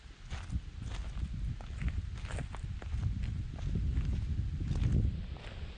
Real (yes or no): yes